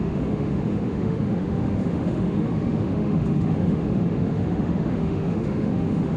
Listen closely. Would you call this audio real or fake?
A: fake